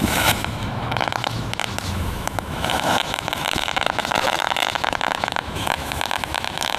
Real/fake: fake